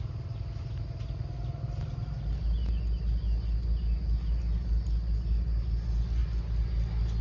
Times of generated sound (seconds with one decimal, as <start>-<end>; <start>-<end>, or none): none